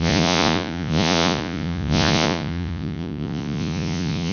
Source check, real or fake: fake